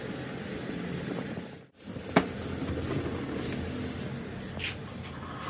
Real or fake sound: real